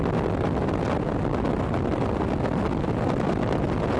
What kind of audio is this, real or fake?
real